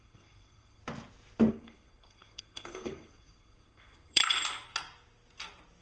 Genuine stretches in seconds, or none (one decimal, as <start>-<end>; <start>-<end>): 0.8-1.5; 4.2-5.8